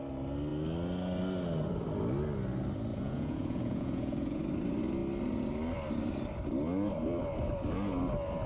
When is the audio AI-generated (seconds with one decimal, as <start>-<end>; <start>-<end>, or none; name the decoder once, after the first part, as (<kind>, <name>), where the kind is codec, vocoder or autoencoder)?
2.9-4.4 (vocoder, Vocos)

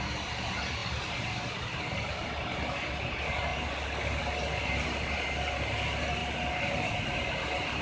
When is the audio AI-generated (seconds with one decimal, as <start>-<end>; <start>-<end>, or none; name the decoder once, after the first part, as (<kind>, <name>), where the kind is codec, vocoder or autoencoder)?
0.8-2.1 (vocoder, BigVGAN v2)

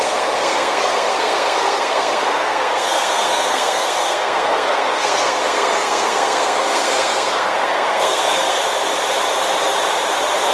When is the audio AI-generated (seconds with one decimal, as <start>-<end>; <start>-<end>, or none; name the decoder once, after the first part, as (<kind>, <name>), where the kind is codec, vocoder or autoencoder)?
0.0-8.6 (codec, SNAC)

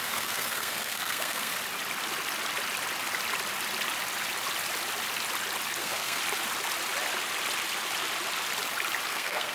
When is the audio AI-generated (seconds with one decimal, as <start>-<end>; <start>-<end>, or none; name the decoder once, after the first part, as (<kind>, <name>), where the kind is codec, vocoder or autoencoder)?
0.0-1.5 (codec, SNAC); 5.8-6.2; 9.1-9.5

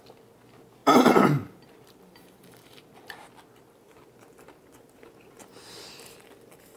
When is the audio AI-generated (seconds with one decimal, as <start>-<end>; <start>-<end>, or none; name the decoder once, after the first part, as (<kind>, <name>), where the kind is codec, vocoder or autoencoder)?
0.8-2.8 (vocoder, BigVGAN v2)

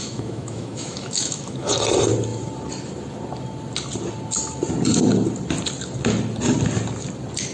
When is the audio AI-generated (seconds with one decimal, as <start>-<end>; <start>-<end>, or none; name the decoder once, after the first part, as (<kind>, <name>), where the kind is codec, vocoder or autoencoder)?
0.0-1.7 (autoencoder, DAC-VAE)

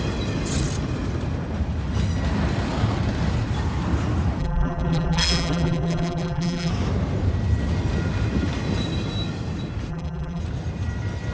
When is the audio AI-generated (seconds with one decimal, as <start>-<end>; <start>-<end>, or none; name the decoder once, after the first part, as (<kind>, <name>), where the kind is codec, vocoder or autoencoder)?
4.4-6.7 (vocoder, BigVGAN v2); 9.9-10.4

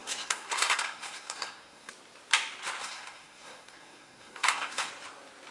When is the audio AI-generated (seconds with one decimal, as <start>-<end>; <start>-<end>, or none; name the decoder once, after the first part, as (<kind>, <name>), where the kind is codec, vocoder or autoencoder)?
0.0-1.9 (codec, SNAC); 2.8-4.9